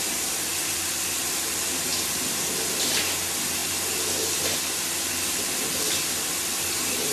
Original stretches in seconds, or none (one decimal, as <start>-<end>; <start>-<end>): 0.0-7.1